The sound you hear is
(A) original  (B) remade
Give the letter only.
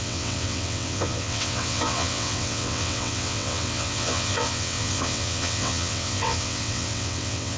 B